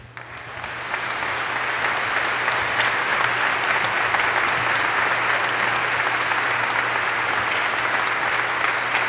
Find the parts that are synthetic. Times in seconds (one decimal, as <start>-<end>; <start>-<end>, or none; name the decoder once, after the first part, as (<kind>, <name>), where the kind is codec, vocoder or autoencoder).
none